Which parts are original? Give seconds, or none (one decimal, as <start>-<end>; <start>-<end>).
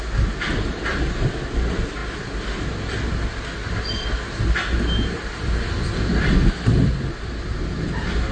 0.0-8.3